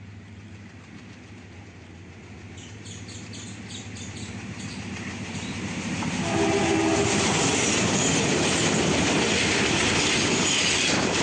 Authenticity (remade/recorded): recorded